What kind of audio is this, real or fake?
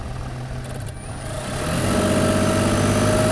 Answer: real